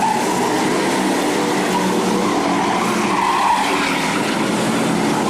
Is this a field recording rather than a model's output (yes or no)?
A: yes